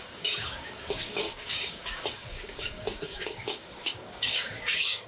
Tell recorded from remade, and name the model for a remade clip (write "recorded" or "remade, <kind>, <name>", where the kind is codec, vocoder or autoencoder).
remade, codec, DAC